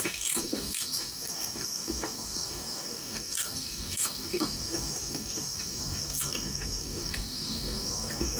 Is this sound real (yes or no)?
no